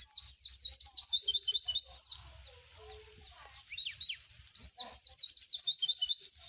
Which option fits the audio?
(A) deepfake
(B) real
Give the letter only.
B